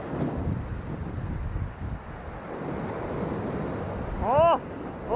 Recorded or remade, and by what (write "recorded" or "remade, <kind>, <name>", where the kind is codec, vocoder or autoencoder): recorded